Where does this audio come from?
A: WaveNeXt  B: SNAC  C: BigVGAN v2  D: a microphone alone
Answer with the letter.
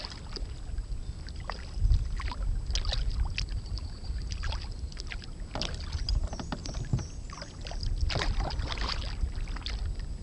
D